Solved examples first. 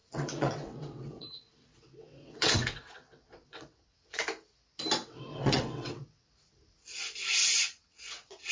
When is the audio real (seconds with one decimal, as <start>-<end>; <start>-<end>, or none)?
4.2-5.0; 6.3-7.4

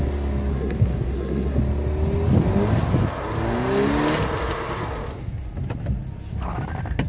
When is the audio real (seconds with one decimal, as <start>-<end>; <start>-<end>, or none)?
0.0-0.5; 1.6-7.1

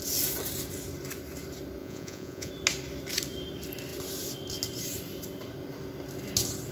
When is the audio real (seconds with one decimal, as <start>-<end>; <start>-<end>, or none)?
0.0-1.8; 2.5-6.7

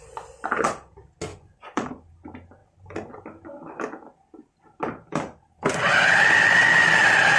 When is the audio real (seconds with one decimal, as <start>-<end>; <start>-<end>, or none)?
0.0-1.3; 1.9-7.4

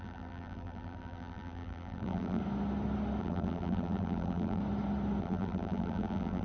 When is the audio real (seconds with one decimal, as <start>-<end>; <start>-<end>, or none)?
2.4-3.2; 4.6-5.2

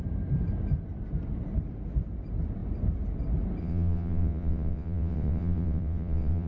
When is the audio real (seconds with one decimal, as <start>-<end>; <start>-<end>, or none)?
0.0-3.6